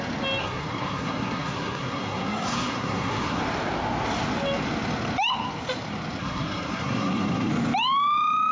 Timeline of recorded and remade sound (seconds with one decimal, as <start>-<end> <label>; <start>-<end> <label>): 0.0-0.4 recorded; 0.4-3.4 remade; 3.4-6.2 recorded; 6.2-7.5 remade; 7.5-8.5 recorded